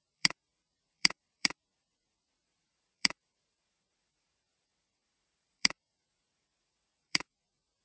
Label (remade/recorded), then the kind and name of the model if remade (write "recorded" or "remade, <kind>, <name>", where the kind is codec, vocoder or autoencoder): remade, vocoder, Vocos